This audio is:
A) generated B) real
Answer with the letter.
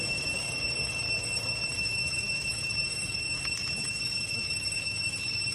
A